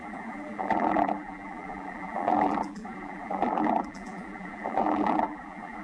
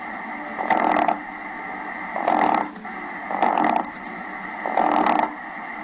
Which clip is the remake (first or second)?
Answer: first